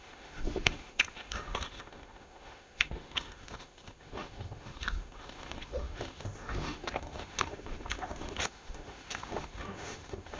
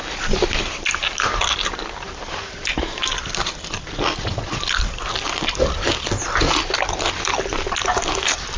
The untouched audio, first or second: second